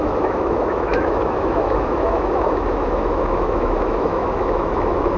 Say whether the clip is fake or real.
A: fake